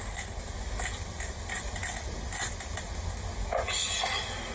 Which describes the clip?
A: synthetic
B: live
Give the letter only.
B